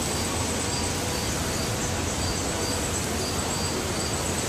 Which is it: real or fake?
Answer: real